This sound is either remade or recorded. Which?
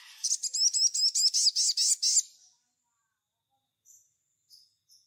recorded